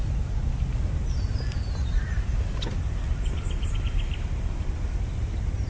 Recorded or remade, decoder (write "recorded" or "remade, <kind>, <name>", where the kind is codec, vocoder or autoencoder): recorded